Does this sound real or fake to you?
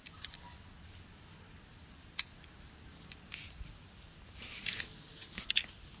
real